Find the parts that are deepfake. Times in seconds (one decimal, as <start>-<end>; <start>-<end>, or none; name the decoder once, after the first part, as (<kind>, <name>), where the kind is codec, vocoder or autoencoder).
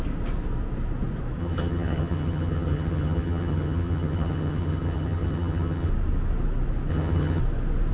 1.4-5.9 (vocoder, HiFi-GAN); 6.9-7.4